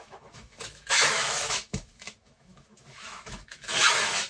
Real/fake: fake